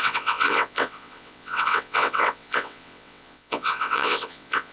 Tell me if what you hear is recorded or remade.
remade